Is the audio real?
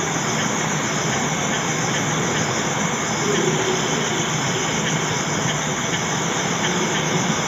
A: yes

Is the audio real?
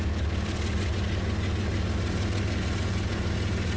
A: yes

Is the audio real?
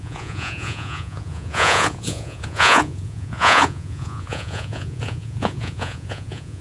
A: no